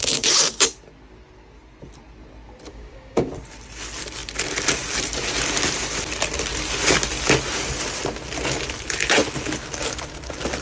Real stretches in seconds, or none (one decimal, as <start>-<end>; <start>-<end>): 0.0-2.7; 3.3-10.6